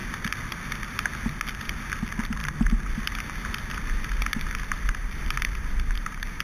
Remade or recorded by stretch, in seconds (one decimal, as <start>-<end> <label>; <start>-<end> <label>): 0.0-5.0 recorded; 5.0-6.4 remade